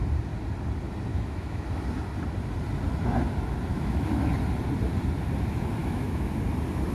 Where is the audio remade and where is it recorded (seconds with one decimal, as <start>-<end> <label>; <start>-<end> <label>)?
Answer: 0.0-1.1 recorded; 1.1-1.6 remade; 1.6-3.7 recorded; 3.7-4.3 remade; 4.3-5.8 recorded; 5.8-6.3 remade; 6.3-6.9 recorded